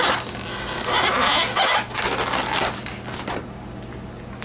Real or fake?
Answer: real